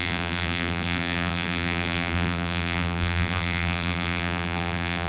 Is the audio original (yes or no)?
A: no